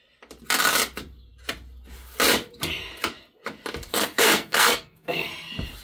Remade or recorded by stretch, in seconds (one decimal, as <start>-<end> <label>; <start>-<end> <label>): 0.0-3.9 recorded; 3.9-5.3 remade; 5.3-5.8 recorded